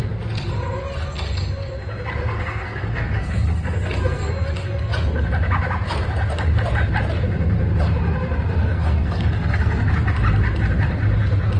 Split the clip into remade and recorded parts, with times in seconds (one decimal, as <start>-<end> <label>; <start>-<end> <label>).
0.0-2.2 recorded; 2.2-4.3 remade; 4.3-8.6 recorded; 8.6-9.9 remade; 9.9-11.6 recorded